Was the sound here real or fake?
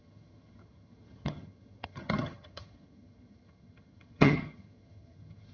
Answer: fake